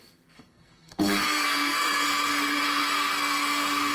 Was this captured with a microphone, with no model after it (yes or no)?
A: no